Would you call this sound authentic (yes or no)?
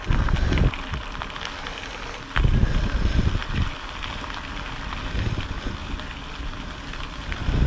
yes